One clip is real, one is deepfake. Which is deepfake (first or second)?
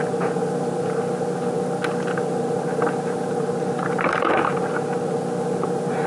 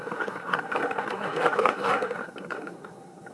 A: second